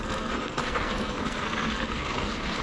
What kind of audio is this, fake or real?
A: fake